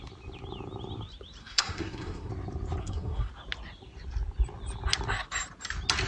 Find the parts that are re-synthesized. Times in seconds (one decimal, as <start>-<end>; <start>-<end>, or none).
1.4-2.3; 2.8-3.3